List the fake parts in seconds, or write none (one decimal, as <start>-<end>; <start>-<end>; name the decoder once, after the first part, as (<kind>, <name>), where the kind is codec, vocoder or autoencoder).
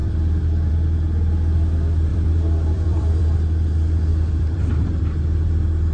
0.0-0.7 (vocoder, BigVGAN v2); 2.1-3.2; 4.1-5.0